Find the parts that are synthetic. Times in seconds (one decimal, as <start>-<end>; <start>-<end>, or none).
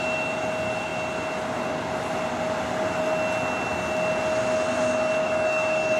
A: 5.2-6.0